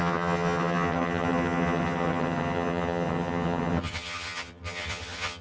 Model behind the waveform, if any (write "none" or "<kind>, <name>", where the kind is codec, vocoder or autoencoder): vocoder, HiFi-GAN